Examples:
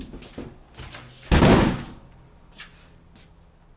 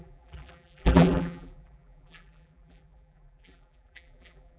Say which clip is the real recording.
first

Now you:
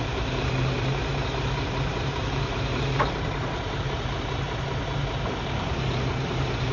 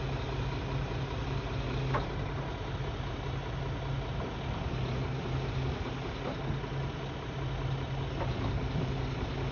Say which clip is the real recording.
second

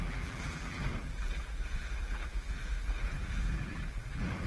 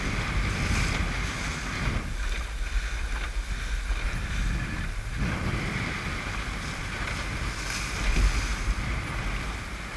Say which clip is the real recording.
second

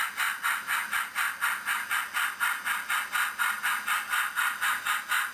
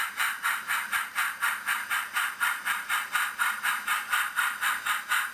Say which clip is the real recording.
first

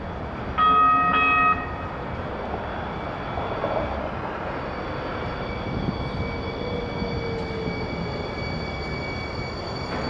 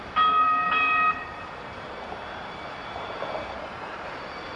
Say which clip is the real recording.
first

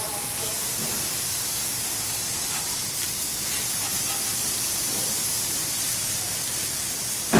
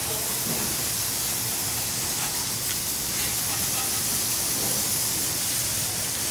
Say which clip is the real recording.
second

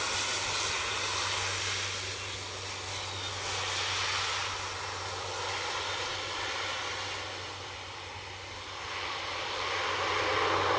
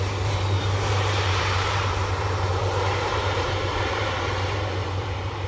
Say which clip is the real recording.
first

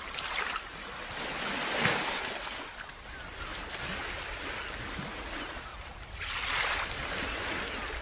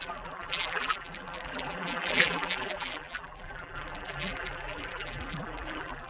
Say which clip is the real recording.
first